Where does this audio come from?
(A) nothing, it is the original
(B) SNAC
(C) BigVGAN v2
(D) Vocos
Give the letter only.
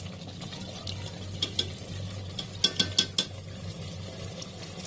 A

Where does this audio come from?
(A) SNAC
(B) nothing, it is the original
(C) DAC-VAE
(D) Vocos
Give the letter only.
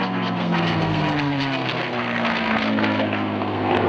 A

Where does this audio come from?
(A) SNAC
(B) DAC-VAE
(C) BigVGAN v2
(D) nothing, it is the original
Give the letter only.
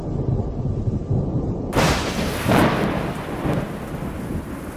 D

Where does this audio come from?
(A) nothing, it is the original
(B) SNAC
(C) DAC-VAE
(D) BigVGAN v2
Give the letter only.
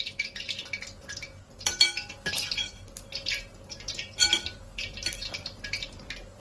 A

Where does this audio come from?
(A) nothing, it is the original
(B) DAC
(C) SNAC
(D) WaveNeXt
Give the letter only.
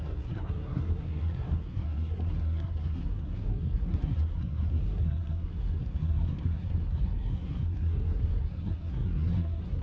C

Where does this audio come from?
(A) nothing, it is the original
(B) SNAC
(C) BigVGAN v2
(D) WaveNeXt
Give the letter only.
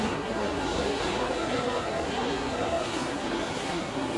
B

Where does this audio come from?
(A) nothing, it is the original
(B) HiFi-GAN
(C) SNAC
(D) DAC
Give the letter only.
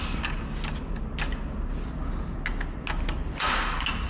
A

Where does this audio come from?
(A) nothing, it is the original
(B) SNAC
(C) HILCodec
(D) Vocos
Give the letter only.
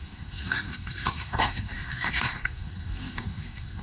B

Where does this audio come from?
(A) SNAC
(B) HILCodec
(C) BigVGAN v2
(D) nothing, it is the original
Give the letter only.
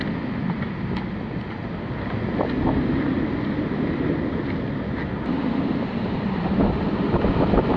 D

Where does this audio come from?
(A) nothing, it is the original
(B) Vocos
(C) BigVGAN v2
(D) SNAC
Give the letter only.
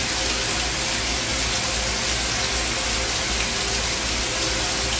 A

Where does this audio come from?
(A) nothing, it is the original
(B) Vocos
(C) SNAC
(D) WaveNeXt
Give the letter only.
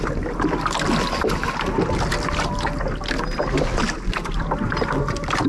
A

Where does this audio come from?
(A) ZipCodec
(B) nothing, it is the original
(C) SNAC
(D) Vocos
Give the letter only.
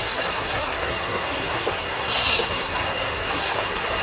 C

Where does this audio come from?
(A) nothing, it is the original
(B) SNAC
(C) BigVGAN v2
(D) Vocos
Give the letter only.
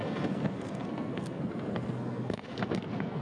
B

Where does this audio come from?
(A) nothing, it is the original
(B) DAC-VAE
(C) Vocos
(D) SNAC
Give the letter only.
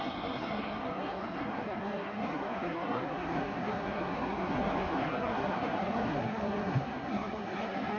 D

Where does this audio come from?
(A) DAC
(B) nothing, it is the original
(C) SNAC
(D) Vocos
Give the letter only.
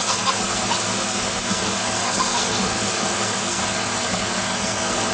C